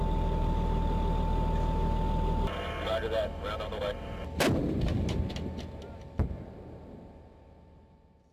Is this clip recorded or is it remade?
recorded